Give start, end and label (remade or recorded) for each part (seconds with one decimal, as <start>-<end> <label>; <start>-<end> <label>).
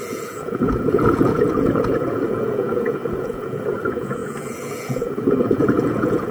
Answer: 0.0-6.3 remade